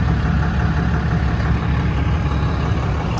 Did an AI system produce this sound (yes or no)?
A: no